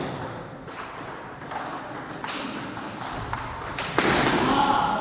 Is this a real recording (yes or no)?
yes